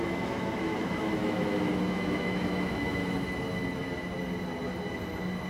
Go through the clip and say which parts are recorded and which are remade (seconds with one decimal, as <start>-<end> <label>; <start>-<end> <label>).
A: 0.0-3.0 remade; 3.0-5.5 recorded